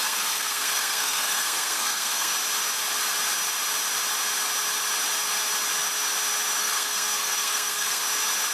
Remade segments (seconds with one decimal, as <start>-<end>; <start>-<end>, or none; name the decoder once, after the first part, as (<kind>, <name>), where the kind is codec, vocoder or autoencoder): 0.0-2.3 (codec, SNAC); 6.6-8.0